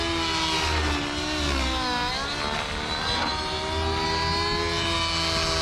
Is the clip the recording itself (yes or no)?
yes